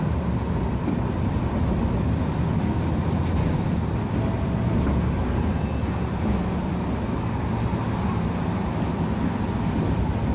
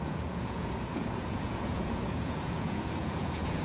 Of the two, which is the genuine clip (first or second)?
first